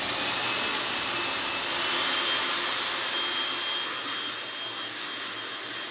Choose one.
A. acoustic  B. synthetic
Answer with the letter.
A